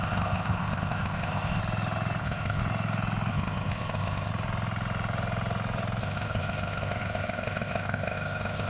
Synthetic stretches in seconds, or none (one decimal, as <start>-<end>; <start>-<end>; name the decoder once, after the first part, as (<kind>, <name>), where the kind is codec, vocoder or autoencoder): 0.0-1.6 (codec, ZipCodec); 2.2-2.6; 3.3-4.3; 6.0-8.7